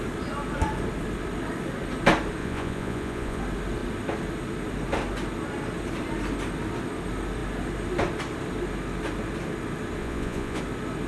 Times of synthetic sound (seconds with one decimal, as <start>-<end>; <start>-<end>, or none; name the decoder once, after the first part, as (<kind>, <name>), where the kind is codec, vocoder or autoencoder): 2.4-3.4 (vocoder, Vocos); 10.0-10.6